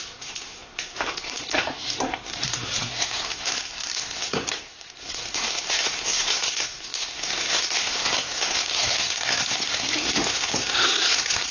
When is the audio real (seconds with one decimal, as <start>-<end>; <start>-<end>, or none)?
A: none